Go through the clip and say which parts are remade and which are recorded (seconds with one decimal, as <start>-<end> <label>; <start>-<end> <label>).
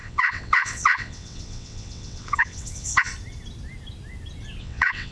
0.0-3.1 remade; 3.1-4.6 recorded; 4.6-5.1 remade